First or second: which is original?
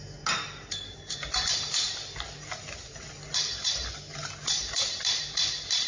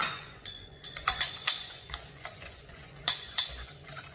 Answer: first